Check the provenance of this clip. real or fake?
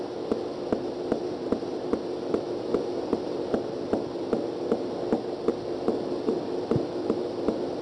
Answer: real